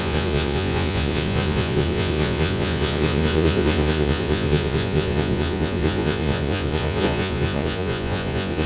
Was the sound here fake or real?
fake